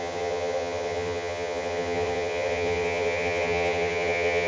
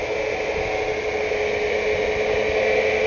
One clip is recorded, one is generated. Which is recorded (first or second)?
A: second